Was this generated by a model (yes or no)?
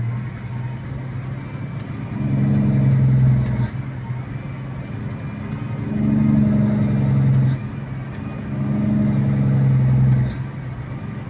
no